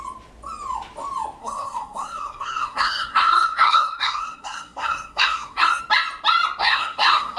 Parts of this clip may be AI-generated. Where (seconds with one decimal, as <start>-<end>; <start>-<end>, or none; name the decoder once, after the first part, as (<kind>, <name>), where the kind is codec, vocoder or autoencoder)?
1.4-5.8 (codec, SNAC); 6.6-7.4